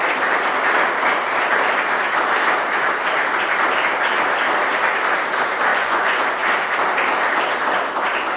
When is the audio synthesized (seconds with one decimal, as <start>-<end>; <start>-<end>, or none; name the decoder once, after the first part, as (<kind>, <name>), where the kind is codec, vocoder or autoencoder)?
5.7-6.2 (vocoder, Vocos)